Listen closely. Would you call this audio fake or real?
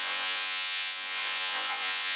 fake